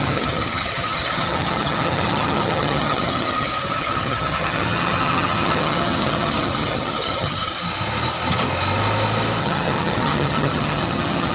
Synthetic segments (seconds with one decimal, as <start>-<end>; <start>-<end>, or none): 0.0-7.5; 9.4-11.3